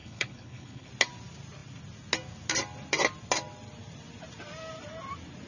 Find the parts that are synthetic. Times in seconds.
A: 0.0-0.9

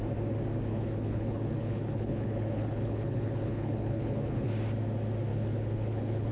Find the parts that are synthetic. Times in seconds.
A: 0.7-4.5; 5.3-6.3

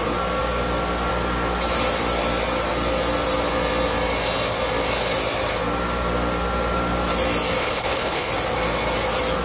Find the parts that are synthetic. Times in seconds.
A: 7.6-8.3

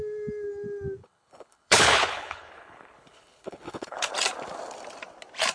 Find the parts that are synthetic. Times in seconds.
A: 1.0-4.1

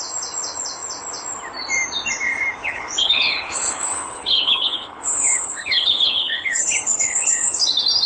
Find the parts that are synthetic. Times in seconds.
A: 2.6-7.5

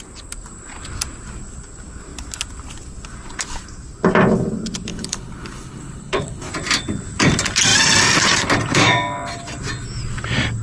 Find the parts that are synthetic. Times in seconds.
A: 4.9-6.5

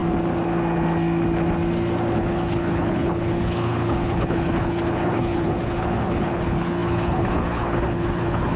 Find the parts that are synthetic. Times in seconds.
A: 2.2-8.6